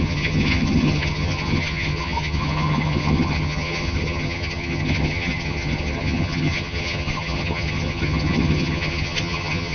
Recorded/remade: remade